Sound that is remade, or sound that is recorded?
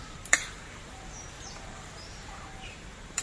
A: remade